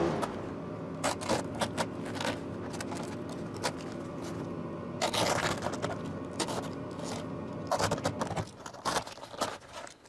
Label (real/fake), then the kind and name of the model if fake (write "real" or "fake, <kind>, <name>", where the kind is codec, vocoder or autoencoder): real